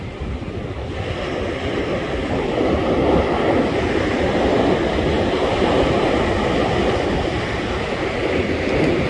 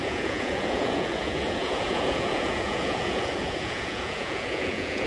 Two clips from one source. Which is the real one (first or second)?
first